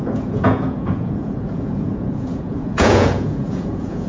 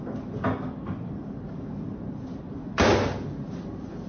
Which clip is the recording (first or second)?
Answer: second